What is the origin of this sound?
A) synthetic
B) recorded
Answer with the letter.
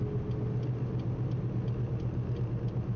B